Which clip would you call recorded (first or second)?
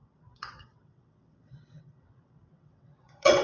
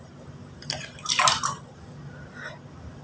second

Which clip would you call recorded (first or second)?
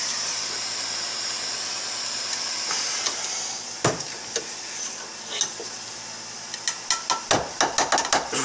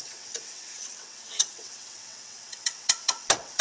first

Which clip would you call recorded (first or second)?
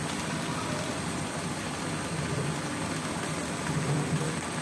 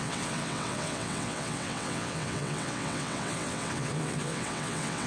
first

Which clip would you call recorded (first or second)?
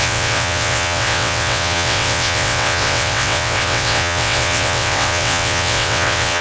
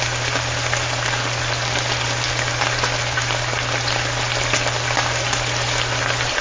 second